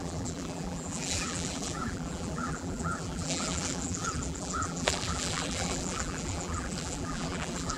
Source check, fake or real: fake